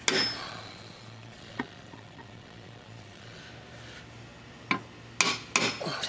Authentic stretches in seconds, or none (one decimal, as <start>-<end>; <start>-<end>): 0.0-0.4; 3.4-6.1